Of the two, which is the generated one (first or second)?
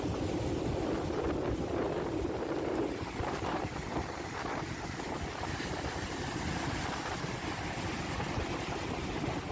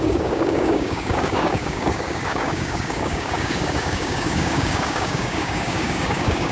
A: second